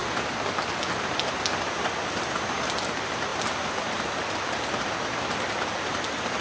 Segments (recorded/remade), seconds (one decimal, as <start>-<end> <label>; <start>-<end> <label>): 0.0-6.4 recorded